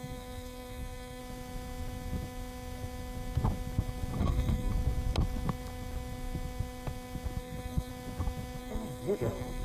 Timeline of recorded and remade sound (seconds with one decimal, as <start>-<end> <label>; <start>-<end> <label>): 0.0-1.2 remade; 1.2-4.2 recorded; 4.2-4.7 remade; 4.7-7.4 recorded; 7.4-7.9 remade; 7.9-8.6 recorded; 8.6-9.6 remade